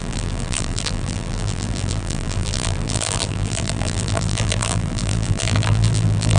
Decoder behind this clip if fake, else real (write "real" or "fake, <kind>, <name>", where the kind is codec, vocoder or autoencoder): fake, vocoder, BigVGAN v2